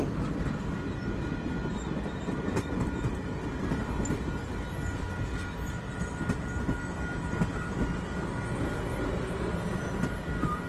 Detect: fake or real real